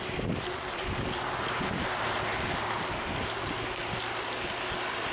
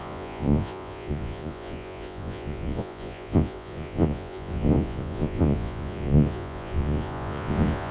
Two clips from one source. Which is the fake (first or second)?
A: second